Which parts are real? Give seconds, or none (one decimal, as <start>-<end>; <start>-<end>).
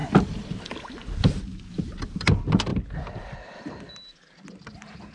0.0-5.1